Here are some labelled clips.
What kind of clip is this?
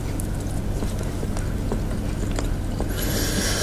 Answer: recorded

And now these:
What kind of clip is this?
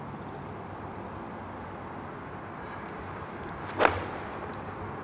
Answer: recorded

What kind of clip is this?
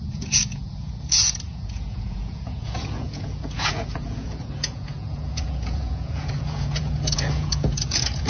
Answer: remade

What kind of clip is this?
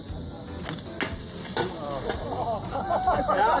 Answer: recorded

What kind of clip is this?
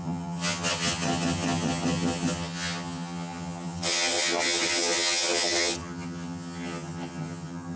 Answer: remade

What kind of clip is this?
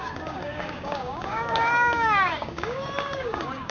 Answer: remade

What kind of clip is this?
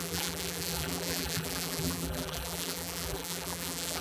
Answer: remade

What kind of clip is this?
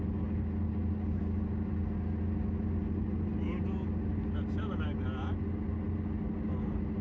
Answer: recorded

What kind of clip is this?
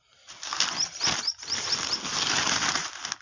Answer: recorded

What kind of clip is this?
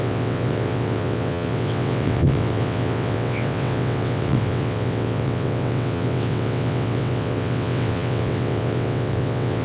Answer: remade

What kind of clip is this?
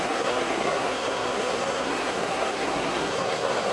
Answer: remade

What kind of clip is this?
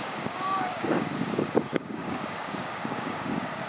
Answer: remade